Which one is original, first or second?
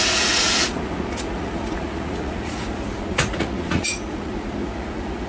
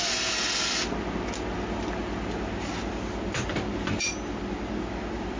second